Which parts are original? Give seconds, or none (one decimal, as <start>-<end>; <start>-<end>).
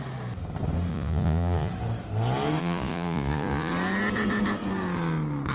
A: 0.0-0.9; 1.7-2.6; 3.7-5.5